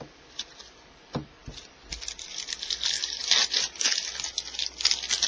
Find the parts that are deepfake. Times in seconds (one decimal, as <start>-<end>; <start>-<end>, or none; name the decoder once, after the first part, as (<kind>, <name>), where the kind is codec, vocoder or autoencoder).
0.0-5.3 (vocoder, BigVGAN v2)